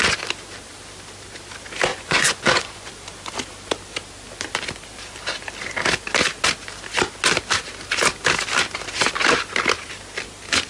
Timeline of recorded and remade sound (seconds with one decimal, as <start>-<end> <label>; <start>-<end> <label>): 0.0-1.9 recorded; 1.9-2.9 remade; 2.9-10.7 recorded